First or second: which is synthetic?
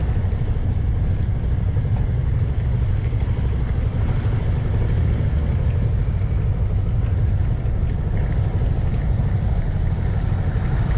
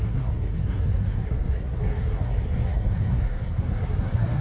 second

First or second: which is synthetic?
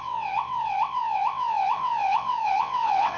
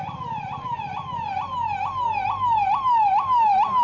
first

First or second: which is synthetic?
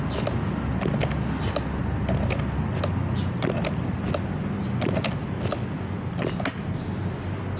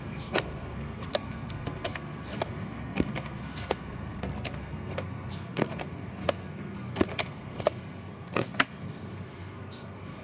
second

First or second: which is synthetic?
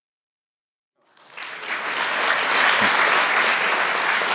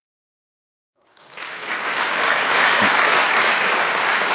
second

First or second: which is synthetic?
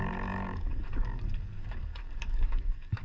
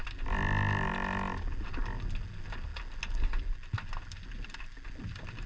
first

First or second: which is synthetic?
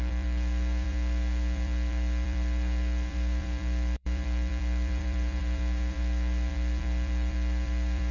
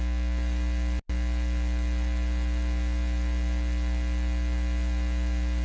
first